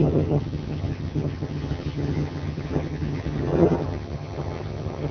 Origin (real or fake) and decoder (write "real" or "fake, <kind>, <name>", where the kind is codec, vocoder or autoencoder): fake, vocoder, HiFi-GAN